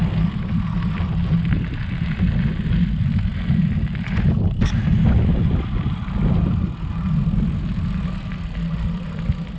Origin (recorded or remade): recorded